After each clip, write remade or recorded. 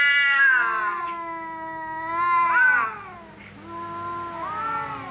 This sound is recorded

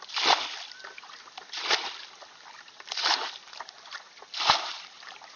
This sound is recorded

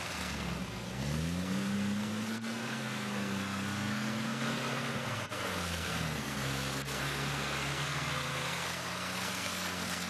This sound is remade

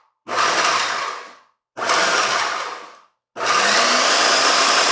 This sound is recorded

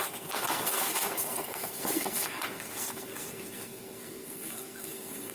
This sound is remade